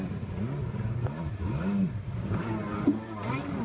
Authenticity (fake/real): real